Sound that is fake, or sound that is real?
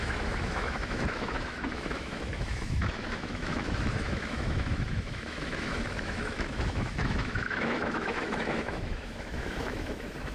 fake